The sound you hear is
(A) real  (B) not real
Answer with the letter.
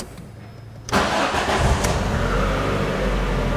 A